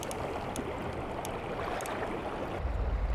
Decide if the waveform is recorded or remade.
recorded